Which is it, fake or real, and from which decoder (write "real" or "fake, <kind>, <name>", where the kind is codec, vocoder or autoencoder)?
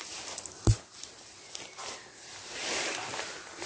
real